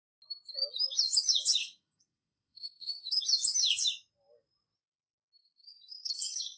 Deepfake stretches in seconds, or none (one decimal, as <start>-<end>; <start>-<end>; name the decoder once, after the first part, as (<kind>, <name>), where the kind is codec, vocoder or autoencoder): 1.6-3.2 (codec, SNAC); 5.4-6.6